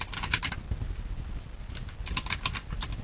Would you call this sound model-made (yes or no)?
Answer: no